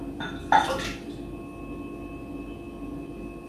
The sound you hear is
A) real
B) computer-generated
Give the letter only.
A